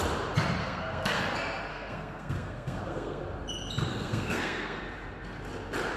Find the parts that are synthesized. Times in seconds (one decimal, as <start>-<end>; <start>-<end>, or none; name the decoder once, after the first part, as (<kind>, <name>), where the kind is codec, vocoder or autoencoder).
0.6-1.2 (codec, SNAC); 1.7-3.2; 3.9-4.8